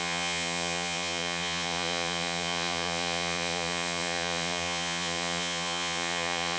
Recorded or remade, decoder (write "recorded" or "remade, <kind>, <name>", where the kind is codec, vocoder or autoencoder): remade, vocoder, Vocos